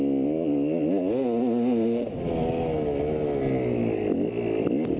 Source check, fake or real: real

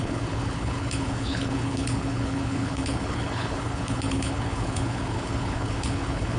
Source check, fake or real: fake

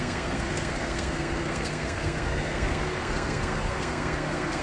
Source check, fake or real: fake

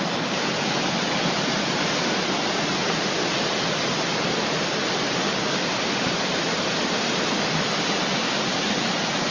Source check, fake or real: real